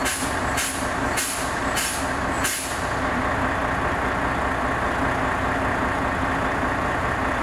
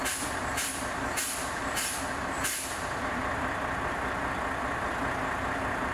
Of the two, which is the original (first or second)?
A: first